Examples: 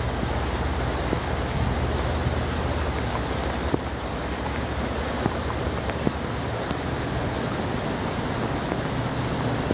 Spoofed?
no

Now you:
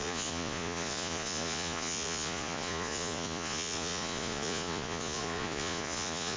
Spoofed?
yes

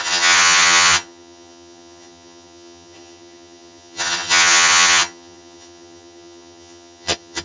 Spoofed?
yes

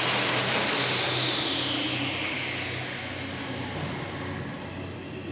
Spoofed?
no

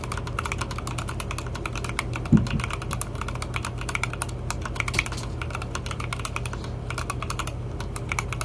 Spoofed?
no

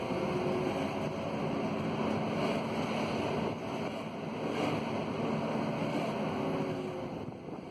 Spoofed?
no